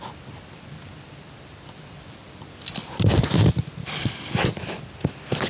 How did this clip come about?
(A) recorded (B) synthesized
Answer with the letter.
A